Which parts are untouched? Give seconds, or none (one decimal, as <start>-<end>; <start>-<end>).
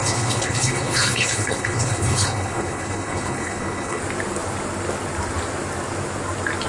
4.0-6.7